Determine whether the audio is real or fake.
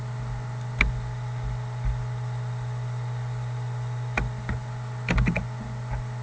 real